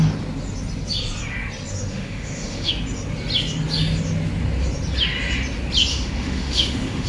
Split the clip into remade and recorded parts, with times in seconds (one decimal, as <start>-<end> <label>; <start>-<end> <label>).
0.0-1.9 recorded; 1.9-2.7 remade; 2.7-5.9 recorded; 5.9-7.1 remade